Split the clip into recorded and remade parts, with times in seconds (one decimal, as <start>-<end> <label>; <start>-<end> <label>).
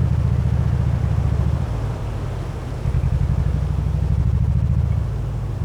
0.0-1.0 recorded; 1.0-2.0 remade; 2.0-5.6 recorded